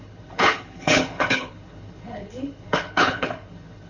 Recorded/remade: remade